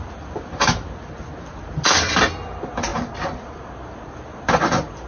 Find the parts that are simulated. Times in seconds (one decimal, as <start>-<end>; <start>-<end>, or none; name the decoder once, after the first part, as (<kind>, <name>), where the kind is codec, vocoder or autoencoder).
none